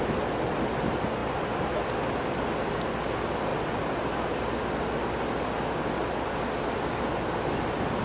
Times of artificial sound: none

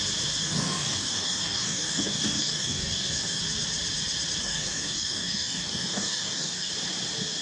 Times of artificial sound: 0.4-3.4 (codec, DAC); 4.4-6.7

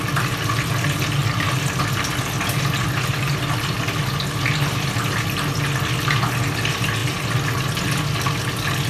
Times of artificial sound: none

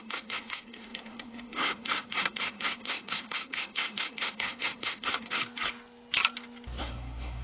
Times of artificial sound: 0.0-5.4 (codec, SNAC); 6.8-7.4